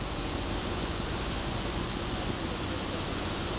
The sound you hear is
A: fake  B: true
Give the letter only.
A